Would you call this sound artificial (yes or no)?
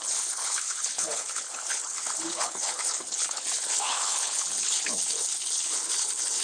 yes